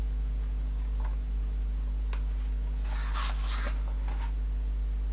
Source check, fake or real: real